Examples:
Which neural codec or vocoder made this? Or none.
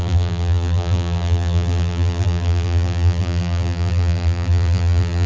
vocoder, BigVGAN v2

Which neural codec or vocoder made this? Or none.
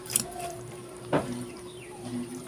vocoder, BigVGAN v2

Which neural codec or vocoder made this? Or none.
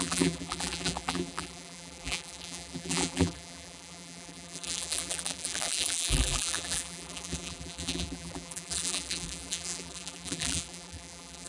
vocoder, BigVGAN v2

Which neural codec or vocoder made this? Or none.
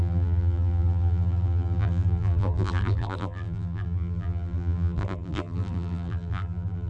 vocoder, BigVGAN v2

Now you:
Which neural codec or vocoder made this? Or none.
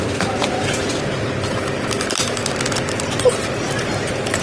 none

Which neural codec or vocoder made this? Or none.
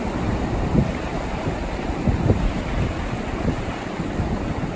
vocoder, BigVGAN v2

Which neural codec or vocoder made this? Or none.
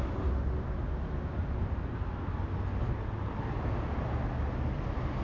none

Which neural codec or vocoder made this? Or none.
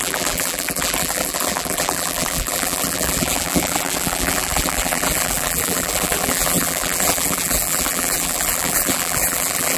vocoder, BigVGAN v2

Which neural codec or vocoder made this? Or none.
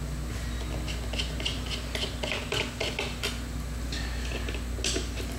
none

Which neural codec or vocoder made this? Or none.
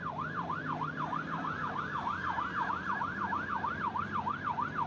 vocoder, BigVGAN v2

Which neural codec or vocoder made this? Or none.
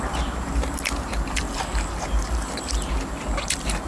vocoder, BigVGAN v2